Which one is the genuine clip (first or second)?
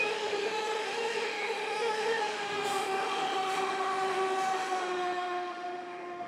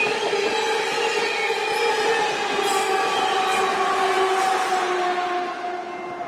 second